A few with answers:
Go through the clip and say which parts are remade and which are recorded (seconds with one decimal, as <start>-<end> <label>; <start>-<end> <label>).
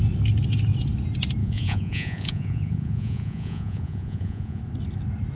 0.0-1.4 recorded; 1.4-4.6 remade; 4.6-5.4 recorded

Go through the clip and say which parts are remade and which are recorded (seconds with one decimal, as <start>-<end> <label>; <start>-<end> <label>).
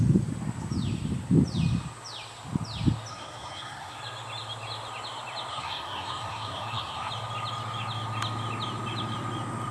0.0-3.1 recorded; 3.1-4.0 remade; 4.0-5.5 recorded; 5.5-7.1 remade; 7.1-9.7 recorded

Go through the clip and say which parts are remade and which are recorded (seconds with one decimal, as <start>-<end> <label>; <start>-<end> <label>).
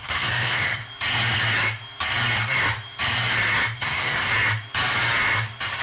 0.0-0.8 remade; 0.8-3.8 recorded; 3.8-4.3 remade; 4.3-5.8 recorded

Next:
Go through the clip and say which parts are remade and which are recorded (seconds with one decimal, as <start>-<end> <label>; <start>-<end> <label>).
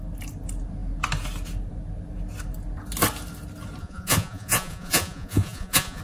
0.0-3.8 recorded; 3.8-6.0 remade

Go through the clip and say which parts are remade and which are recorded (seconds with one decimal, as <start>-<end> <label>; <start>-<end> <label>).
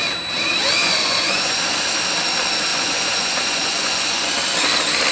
0.0-0.8 recorded; 0.8-1.6 remade; 1.6-2.7 recorded; 2.7-4.3 remade; 4.3-5.1 recorded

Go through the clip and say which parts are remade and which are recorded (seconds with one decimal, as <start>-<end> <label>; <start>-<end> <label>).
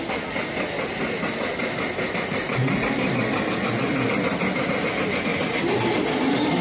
0.0-6.6 recorded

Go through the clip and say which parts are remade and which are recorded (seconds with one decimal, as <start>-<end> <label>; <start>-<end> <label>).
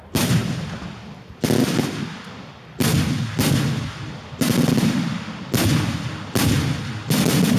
0.0-7.6 recorded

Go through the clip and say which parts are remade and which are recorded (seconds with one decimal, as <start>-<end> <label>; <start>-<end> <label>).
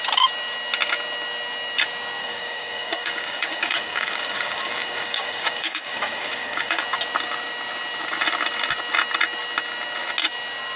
0.0-2.2 recorded; 2.2-6.8 remade; 6.8-10.8 recorded